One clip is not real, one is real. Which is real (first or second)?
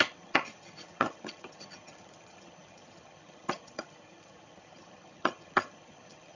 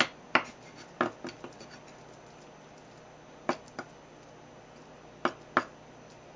second